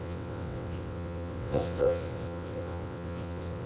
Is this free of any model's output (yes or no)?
no